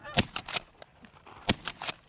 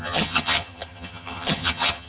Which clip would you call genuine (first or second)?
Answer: first